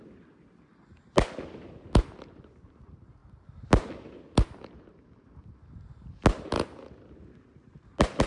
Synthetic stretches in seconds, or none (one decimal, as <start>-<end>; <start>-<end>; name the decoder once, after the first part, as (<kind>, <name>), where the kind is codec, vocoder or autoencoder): none